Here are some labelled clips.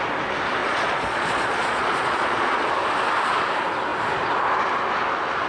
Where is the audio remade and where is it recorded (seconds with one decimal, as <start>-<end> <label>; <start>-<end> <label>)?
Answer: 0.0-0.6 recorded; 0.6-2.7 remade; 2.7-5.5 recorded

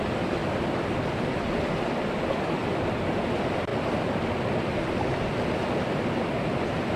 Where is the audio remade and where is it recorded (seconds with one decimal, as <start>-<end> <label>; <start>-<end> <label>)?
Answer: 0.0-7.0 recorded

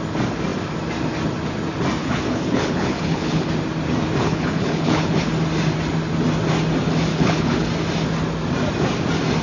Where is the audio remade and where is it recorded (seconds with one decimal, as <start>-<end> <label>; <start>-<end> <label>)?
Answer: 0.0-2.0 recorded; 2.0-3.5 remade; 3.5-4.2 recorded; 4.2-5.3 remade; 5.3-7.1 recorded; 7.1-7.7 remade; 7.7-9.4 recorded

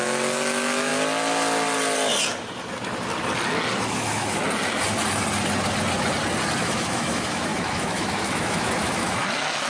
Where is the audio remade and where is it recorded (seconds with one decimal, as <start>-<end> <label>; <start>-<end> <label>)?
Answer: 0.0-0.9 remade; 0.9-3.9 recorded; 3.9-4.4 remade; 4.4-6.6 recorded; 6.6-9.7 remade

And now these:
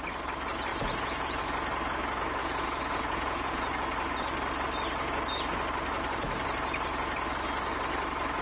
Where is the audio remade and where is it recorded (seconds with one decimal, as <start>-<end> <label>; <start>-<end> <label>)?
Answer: 0.0-0.7 recorded; 0.7-1.4 remade; 1.4-2.4 recorded; 2.4-3.7 remade; 3.7-8.4 recorded

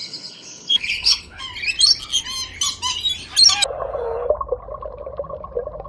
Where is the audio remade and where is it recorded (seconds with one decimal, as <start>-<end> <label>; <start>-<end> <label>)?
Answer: 0.0-1.4 remade; 1.4-5.9 recorded

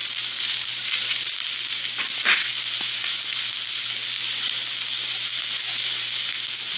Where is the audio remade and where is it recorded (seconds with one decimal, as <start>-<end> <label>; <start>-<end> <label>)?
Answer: 0.0-1.2 remade; 1.2-6.8 recorded